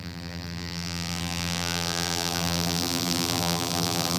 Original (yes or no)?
no